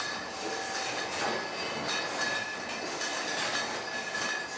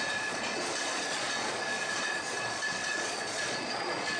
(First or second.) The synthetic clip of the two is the second